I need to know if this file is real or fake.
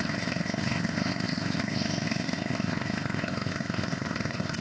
fake